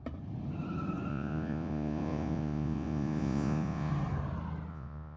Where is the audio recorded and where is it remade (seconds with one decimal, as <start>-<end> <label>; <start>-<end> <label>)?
0.0-1.1 recorded; 1.1-3.9 remade; 3.9-4.7 recorded; 4.7-5.2 remade